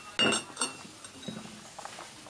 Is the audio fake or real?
real